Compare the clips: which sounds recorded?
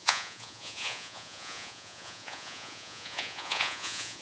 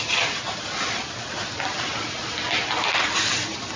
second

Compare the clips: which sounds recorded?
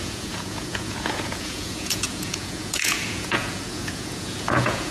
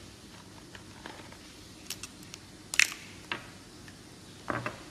second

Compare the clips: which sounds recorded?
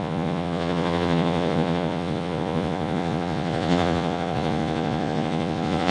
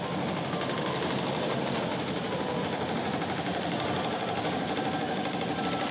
second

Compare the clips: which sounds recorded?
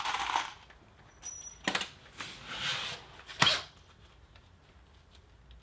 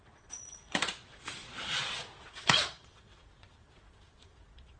first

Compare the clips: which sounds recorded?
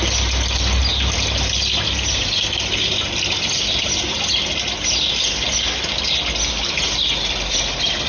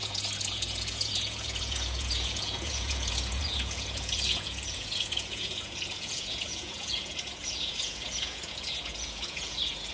first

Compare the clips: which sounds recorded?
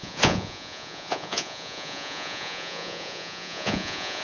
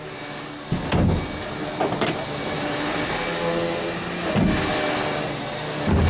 second